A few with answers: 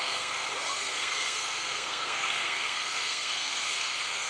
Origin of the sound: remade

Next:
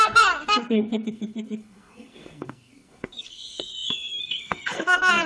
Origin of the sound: remade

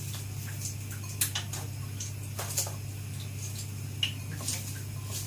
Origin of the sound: recorded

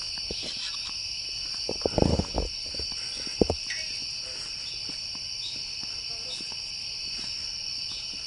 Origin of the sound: recorded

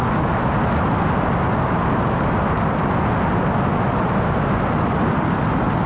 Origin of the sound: recorded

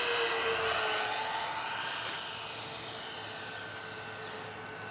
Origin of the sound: recorded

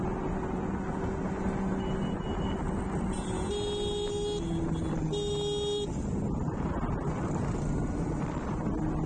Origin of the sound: recorded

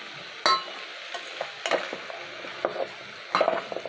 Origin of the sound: recorded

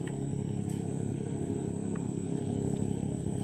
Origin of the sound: remade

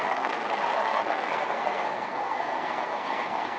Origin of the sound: remade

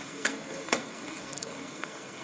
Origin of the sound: remade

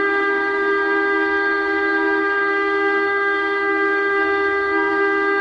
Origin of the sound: remade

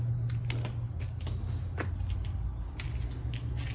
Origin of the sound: recorded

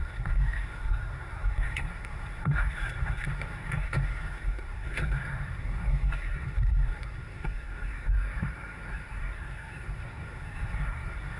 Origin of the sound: remade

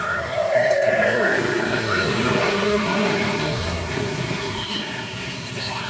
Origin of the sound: remade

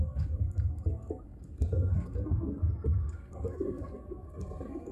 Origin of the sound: remade